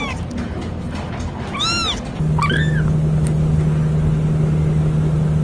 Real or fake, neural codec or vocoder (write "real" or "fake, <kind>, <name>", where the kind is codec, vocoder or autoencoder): real